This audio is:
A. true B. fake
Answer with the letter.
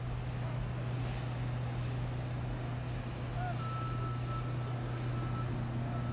A